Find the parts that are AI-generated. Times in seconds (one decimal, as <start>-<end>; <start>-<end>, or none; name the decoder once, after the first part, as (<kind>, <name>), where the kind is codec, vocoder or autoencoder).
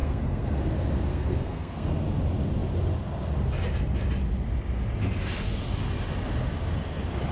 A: 0.0-0.6 (codec, SNAC); 1.1-1.9